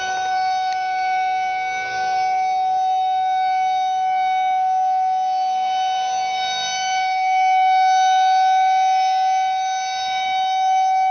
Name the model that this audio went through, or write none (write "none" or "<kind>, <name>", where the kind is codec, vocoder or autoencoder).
none